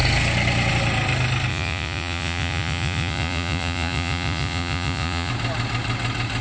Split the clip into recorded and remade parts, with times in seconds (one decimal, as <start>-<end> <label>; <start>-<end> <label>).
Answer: 0.0-1.5 recorded; 1.5-5.3 remade; 5.3-6.4 recorded